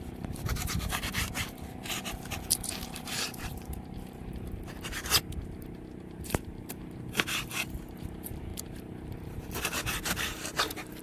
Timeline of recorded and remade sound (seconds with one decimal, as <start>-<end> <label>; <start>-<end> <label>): 0.0-11.0 remade